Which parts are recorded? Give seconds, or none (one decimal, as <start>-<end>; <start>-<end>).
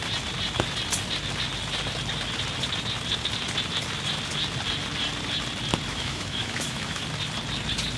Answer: 0.0-5.9; 7.0-8.0